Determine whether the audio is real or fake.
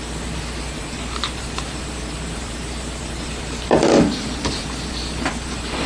fake